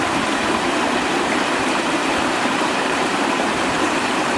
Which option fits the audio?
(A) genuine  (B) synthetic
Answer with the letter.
B